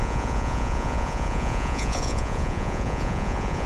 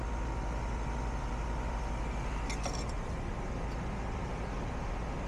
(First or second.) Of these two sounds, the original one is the second